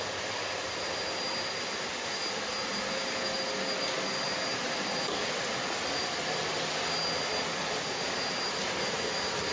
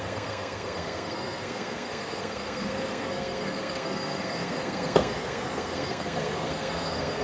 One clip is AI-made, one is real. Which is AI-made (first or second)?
second